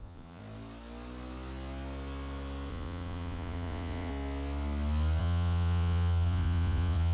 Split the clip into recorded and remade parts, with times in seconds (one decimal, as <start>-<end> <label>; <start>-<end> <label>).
0.0-0.4 remade; 0.4-2.7 recorded; 2.7-4.1 remade; 4.1-5.2 recorded; 5.2-7.1 remade